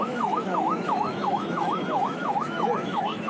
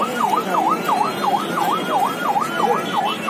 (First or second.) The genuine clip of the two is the second